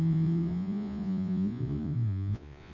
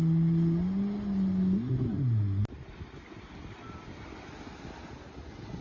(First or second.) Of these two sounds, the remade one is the first